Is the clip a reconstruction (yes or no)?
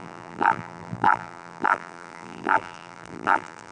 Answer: yes